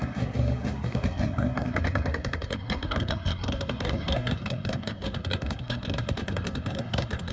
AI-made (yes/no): yes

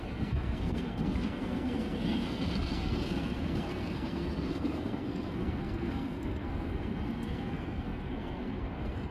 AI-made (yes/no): yes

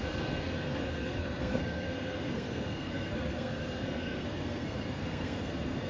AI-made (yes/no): yes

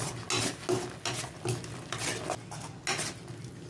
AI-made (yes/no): no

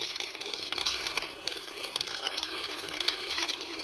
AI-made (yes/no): yes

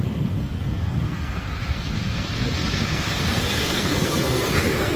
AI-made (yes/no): yes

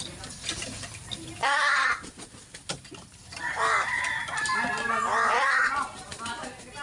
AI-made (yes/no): no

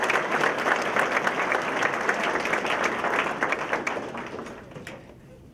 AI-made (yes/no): no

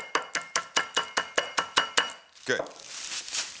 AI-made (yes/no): no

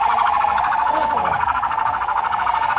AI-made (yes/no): yes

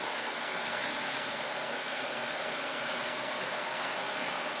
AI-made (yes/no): yes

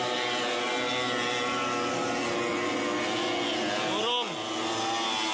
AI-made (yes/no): no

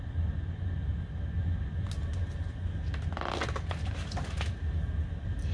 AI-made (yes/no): no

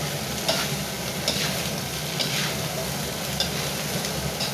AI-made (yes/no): no